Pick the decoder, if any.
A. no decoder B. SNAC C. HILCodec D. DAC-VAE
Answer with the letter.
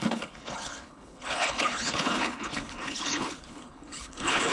C